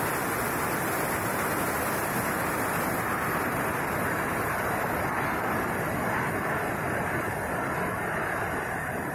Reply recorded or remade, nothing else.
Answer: recorded